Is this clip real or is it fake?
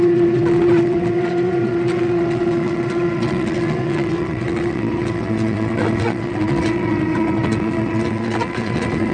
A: fake